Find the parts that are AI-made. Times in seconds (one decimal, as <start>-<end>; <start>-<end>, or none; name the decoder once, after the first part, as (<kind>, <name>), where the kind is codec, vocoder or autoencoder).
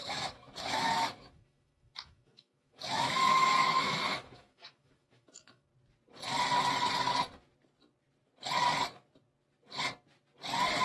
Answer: 0.0-5.7 (autoencoder, DAC-VAE)